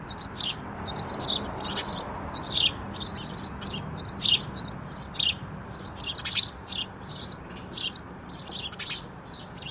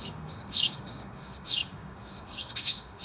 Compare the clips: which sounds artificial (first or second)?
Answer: second